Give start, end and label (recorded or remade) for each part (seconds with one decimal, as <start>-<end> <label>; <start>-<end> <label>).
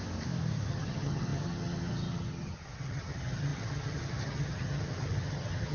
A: 0.0-0.7 recorded; 0.7-5.7 remade